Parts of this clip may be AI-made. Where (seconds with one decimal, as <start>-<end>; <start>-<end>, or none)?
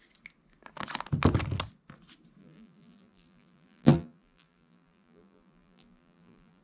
2.4-6.6